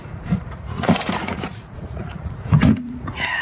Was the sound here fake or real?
fake